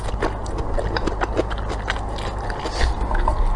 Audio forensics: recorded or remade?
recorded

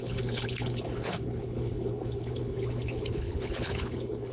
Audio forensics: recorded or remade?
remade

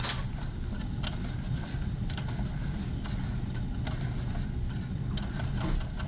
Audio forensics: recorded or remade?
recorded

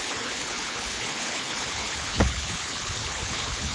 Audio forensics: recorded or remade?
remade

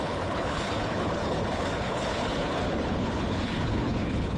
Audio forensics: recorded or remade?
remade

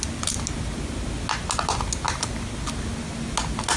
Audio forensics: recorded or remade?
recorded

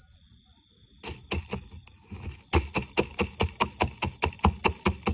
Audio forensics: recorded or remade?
recorded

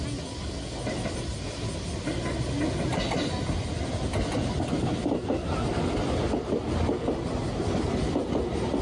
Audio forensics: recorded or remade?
recorded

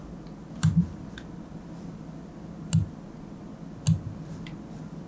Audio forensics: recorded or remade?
recorded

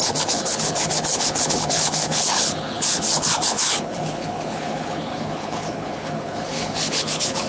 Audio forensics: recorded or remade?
remade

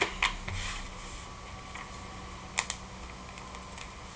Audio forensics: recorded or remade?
recorded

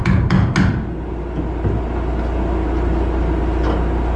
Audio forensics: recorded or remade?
recorded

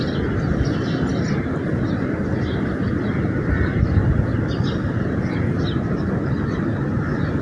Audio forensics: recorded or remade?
recorded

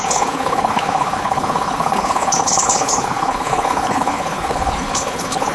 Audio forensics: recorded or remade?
remade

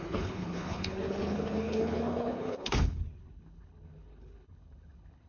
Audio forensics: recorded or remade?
remade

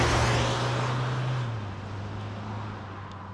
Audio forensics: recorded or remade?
recorded